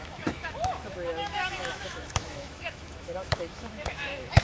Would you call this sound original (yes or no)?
no